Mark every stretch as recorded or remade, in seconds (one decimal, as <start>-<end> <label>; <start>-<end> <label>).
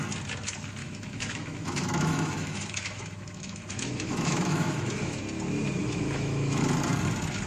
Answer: 0.0-0.8 recorded; 0.8-5.2 remade; 5.2-5.8 recorded; 5.8-6.6 remade; 6.6-7.5 recorded